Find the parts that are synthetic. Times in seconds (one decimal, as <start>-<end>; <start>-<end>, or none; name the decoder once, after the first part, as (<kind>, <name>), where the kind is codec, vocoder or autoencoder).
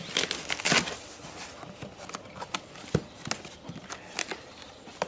none